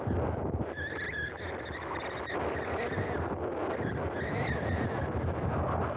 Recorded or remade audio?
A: recorded